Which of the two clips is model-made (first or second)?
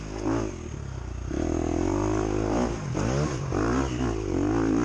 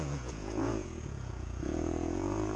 second